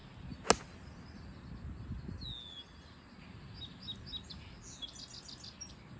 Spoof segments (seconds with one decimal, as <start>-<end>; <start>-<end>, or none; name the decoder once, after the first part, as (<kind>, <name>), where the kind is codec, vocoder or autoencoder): none